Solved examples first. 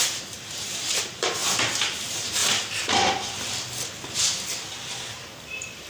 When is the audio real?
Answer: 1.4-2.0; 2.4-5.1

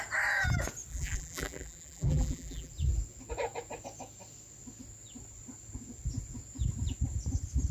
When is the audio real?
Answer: 0.0-0.9; 2.7-7.7

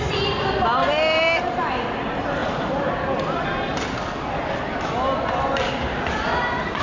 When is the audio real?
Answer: 0.0-0.8; 1.4-6.8